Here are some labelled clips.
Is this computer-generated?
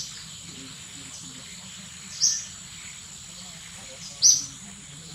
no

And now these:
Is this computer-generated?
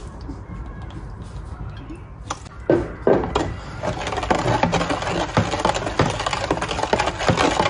no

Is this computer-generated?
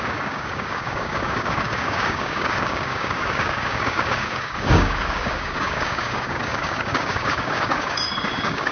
yes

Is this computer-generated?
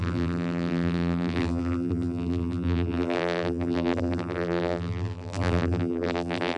yes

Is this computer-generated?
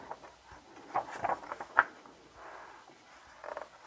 no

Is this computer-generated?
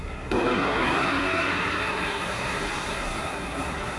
yes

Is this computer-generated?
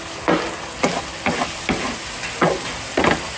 no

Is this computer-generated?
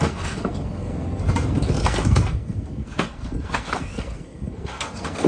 yes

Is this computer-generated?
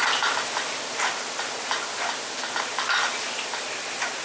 no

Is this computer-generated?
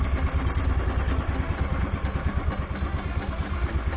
no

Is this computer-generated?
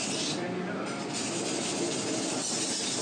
no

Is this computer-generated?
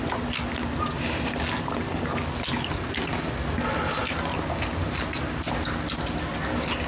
no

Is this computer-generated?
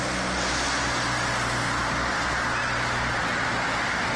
no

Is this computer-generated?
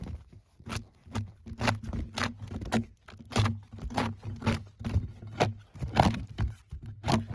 no